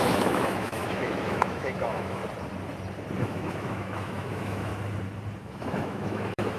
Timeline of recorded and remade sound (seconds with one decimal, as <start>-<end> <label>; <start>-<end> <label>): 0.0-2.2 remade; 2.2-3.2 recorded; 3.2-4.7 remade; 4.7-5.4 recorded; 5.4-6.6 remade